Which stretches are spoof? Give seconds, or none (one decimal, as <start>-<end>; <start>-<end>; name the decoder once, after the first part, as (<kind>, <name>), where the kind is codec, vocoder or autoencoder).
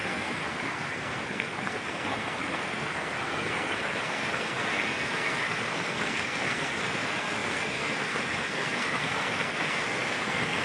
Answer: 0.0-10.6 (codec, SNAC)